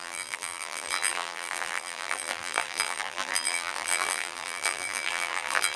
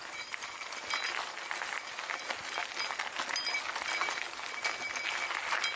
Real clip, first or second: second